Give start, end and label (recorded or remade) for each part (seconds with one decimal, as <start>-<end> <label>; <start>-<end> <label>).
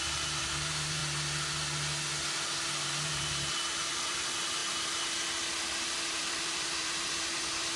0.0-1.0 remade; 1.0-3.1 recorded; 3.1-4.6 remade; 4.6-5.6 recorded; 5.6-7.8 remade